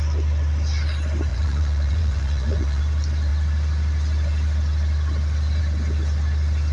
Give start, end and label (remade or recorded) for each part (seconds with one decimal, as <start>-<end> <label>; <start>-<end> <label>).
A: 0.0-1.3 recorded; 1.3-2.8 remade; 2.8-6.7 recorded